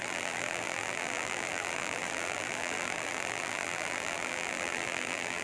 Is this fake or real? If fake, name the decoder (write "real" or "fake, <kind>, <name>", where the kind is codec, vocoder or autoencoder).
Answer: fake, vocoder, BigVGAN v2